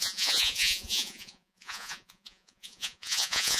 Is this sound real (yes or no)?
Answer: no